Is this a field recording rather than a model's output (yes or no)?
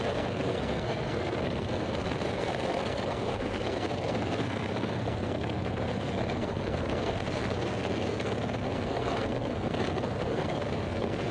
no